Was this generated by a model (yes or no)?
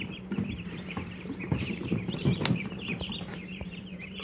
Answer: yes